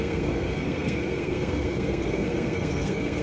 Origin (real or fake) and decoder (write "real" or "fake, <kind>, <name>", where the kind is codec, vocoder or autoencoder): fake, codec, SNAC